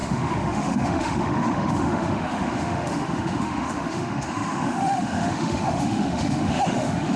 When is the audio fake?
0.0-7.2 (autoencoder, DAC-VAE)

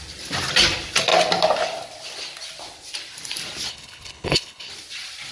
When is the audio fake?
3.7-4.7 (codec, HILCodec)